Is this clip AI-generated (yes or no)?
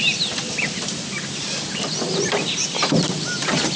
no